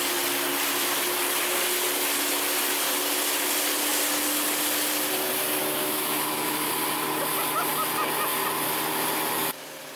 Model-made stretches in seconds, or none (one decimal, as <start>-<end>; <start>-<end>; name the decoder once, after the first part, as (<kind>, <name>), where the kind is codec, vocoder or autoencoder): 5.8-6.7 (autoencoder, DAC-VAE)